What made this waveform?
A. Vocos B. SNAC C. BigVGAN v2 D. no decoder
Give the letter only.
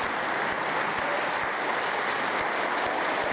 D